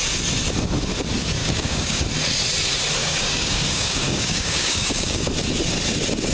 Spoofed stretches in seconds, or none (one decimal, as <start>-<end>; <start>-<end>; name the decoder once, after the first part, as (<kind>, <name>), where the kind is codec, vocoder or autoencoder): 1.4-2.0 (codec, DAC); 3.0-5.3